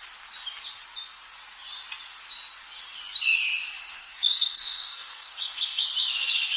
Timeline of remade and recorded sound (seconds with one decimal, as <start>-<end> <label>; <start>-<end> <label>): 0.0-3.9 recorded; 3.9-5.8 remade; 5.8-6.6 recorded